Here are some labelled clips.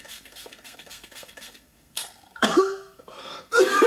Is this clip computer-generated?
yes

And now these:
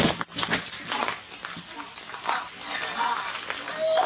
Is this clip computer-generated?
no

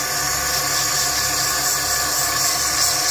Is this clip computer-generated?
no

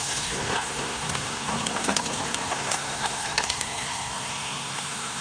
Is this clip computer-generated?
yes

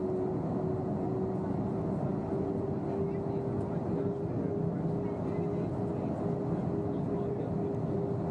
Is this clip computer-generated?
no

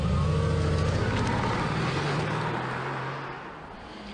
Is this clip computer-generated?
no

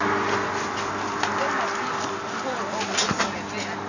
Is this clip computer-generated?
no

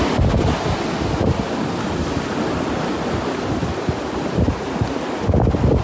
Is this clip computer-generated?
no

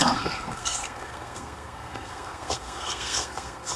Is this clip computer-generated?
yes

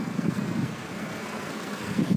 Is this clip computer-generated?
yes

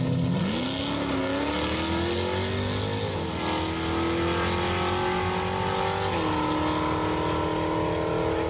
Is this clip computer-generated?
no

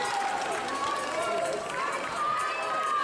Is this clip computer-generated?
no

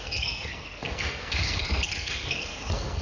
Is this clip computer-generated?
yes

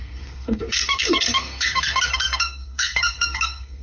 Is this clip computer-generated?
yes